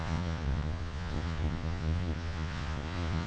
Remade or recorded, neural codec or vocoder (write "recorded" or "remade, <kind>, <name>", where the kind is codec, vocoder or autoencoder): remade, vocoder, Vocos